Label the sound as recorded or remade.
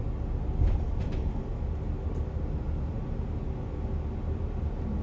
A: recorded